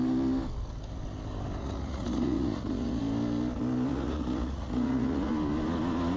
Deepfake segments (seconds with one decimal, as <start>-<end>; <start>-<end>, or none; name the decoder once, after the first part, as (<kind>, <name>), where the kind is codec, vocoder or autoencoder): 1.6-3.0 (vocoder, Vocos); 3.9-5.3